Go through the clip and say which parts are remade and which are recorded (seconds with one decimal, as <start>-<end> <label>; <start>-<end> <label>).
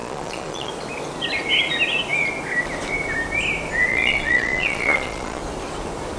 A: 0.0-0.7 remade; 0.7-3.9 recorded; 3.9-5.4 remade; 5.4-6.2 recorded